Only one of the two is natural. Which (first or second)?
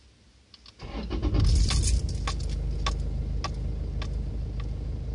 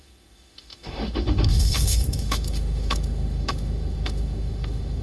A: first